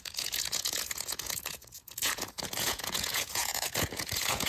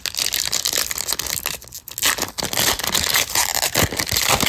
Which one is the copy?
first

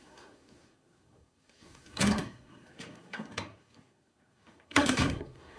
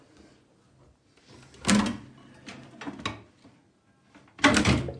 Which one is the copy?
first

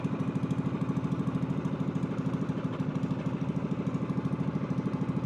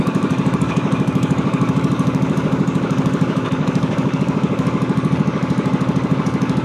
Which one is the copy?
second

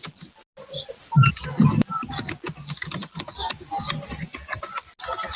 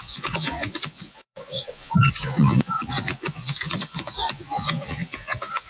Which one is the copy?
second